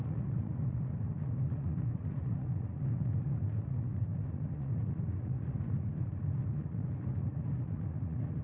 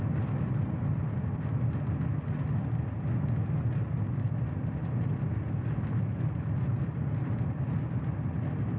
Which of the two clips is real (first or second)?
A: second